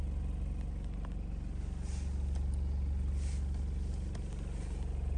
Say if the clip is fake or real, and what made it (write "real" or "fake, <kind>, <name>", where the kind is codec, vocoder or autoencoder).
real